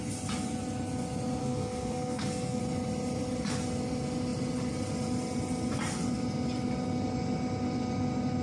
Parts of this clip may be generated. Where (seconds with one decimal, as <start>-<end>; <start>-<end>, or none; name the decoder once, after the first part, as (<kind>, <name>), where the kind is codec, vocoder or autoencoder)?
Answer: 1.4-2.6 (codec, SNAC)